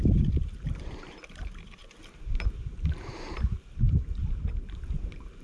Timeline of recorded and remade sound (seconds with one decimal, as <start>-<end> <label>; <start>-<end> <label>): 0.0-4.2 remade; 4.2-4.8 recorded; 4.8-5.4 remade